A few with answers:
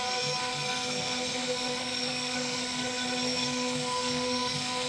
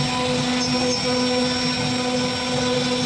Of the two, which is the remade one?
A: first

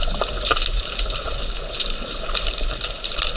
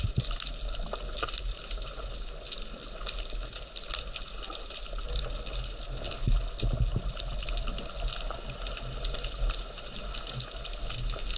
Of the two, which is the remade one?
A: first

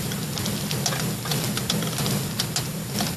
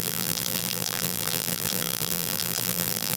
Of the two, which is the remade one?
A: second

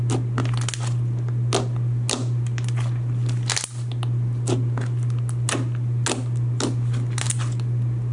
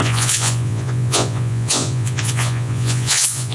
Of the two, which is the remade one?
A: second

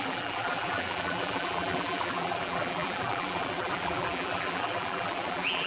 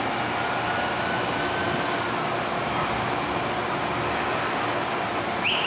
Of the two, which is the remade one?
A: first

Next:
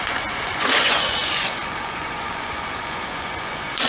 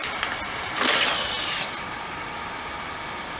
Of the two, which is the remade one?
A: first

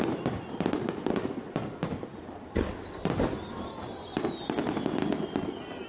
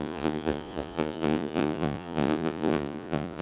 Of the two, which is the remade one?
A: second